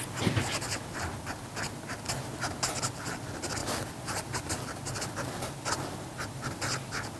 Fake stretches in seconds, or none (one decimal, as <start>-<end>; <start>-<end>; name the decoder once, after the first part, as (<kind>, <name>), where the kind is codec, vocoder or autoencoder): none